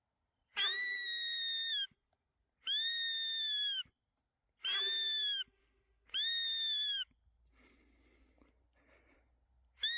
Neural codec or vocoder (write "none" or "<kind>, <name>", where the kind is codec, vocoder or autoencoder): none